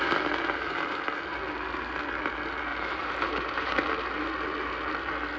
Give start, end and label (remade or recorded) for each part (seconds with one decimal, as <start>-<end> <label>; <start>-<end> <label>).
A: 0.0-2.7 recorded; 2.7-3.9 remade; 3.9-5.4 recorded